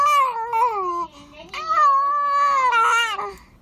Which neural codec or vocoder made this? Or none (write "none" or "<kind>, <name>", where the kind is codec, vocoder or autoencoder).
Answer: none